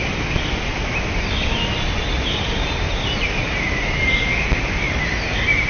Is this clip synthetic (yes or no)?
no